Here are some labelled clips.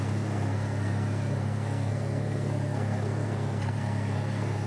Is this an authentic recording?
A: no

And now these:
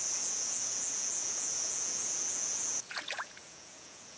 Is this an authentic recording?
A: no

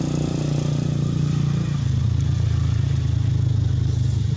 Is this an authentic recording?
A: yes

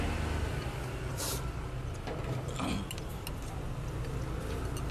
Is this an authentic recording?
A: yes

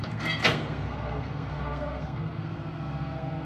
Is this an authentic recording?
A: no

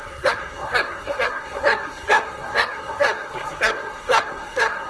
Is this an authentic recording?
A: no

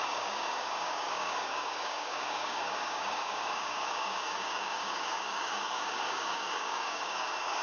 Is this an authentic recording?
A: no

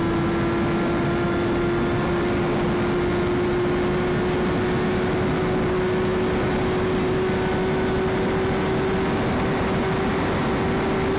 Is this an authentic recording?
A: yes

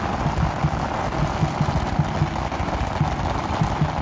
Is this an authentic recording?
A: yes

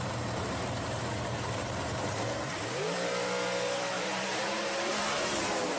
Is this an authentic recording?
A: no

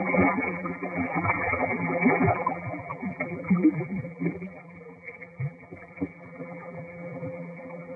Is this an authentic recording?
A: no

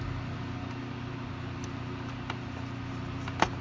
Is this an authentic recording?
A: yes